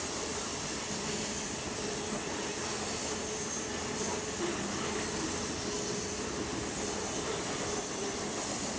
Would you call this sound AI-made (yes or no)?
no